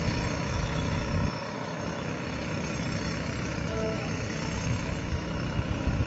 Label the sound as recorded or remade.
remade